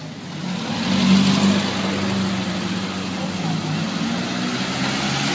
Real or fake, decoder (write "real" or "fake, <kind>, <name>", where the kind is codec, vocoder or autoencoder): real